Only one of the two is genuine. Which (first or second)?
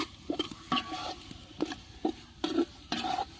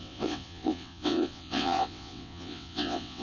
first